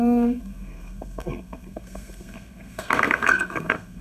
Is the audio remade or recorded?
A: remade